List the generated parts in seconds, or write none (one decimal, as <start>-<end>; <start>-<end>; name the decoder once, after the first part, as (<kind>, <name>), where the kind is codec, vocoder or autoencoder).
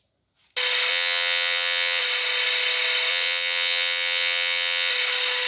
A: 0.9-2.0 (vocoder, WaveNeXt); 3.1-4.9